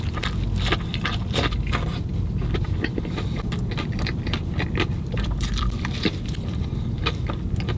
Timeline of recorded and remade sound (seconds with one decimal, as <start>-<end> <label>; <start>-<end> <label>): 0.0-1.9 recorded; 1.9-6.6 remade; 6.6-7.8 recorded